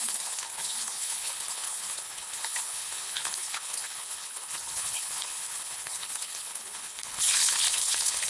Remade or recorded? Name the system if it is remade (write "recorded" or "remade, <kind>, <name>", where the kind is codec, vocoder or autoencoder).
remade, codec, HILCodec